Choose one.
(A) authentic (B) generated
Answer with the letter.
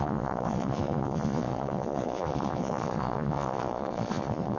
B